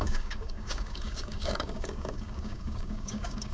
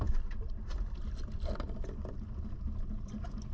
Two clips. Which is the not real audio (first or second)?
first